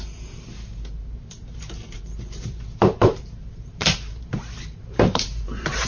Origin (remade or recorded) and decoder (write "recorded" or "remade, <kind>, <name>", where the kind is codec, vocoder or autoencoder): remade, vocoder, BigVGAN v2